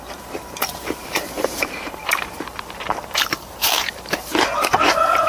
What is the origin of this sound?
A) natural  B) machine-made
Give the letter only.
B